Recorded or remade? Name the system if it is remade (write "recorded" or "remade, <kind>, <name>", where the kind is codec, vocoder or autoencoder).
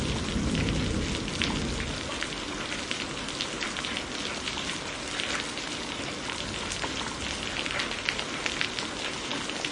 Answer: recorded